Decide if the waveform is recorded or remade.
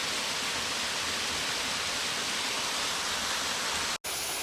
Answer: recorded